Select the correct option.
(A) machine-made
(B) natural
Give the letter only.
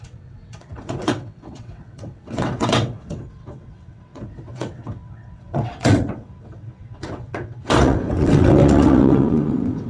A